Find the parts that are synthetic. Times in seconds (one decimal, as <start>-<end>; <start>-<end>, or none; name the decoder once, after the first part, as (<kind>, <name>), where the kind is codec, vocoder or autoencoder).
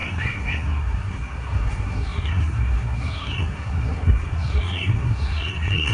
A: 0.0-5.9 (codec, SNAC)